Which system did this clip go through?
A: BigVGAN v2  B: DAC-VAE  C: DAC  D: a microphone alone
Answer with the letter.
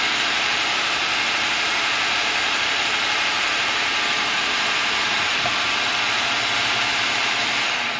A